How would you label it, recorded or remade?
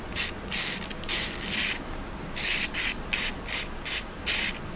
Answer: recorded